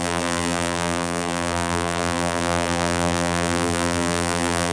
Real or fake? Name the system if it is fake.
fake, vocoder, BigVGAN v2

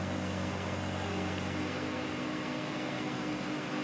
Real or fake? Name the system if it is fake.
fake, codec, SNAC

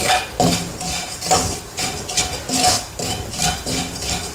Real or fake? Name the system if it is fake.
real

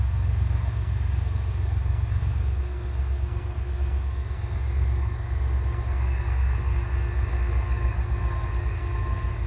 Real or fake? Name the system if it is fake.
fake, codec, SNAC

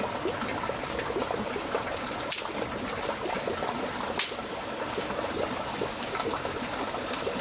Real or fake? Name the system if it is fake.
real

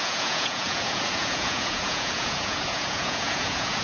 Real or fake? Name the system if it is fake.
fake, vocoder, Vocos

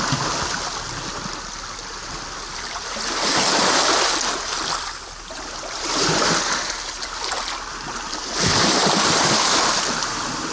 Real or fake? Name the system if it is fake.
real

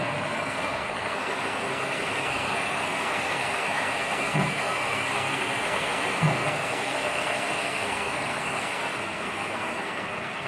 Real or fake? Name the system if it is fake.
fake, codec, SNAC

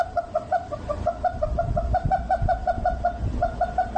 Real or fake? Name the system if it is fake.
real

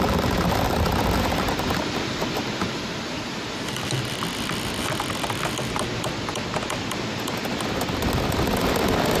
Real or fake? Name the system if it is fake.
real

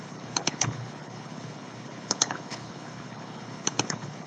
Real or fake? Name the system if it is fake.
fake, codec, HILCodec